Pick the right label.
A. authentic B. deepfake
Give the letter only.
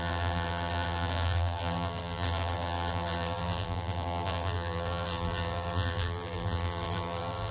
B